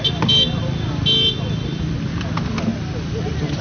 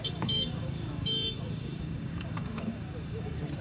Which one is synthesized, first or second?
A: second